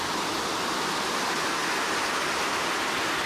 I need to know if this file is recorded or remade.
recorded